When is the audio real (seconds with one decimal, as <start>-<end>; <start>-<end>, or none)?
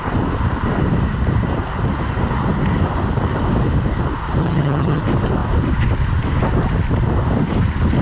0.0-4.4; 5.0-8.0